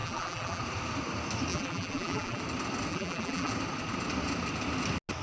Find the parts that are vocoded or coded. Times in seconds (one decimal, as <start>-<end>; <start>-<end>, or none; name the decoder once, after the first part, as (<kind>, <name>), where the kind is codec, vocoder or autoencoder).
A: 0.0-0.6 (vocoder, BigVGAN v2); 1.5-2.4; 2.9-3.5